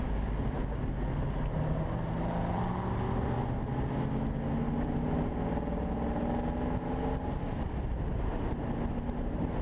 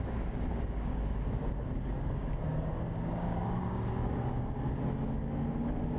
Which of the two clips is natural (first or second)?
first